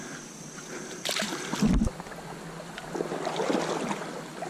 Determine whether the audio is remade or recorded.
recorded